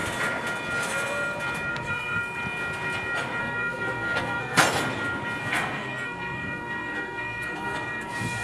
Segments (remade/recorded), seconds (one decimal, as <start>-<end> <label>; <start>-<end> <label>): 0.0-1.7 recorded; 1.7-2.2 remade; 2.2-3.4 recorded; 3.4-4.6 remade; 4.6-5.4 recorded; 5.4-8.4 remade